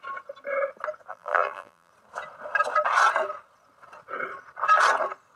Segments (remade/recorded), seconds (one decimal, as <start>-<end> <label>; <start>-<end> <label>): 0.0-1.1 recorded; 1.1-1.9 remade; 1.9-5.4 recorded